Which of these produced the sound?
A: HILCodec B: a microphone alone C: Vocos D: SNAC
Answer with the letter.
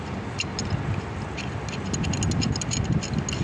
B